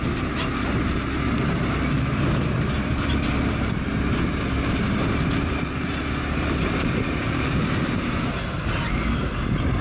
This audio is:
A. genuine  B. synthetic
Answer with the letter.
B